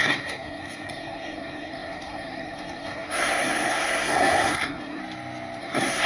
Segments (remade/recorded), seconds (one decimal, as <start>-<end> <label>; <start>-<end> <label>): 0.0-5.0 remade; 5.0-5.6 recorded; 5.6-6.1 remade